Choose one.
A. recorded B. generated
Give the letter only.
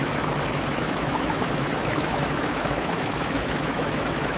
B